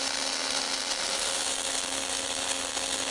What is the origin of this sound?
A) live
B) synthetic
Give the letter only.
A